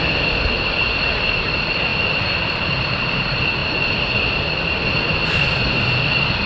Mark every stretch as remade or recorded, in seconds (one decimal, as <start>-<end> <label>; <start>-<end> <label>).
0.0-6.5 recorded